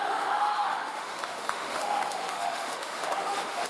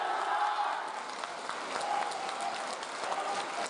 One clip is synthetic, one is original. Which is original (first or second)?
second